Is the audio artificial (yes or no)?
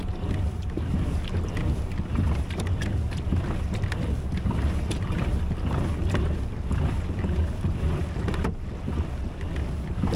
no